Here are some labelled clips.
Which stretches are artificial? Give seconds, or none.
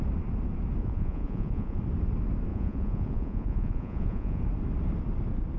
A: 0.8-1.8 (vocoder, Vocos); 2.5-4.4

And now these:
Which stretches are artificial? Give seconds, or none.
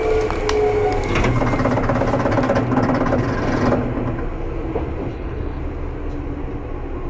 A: 5.1-5.6 (codec, HILCodec)